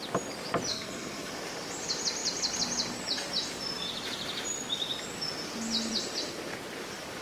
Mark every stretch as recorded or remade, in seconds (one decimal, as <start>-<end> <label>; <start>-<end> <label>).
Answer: 0.0-0.7 recorded; 0.7-1.3 remade; 1.3-7.2 recorded